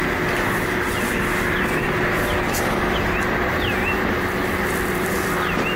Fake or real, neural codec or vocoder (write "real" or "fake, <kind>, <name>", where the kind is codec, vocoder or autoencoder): real